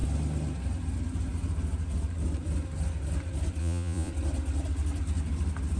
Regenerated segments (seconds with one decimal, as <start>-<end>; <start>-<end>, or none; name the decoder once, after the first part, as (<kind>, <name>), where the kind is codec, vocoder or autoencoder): 3.6-4.1 (vocoder, Vocos)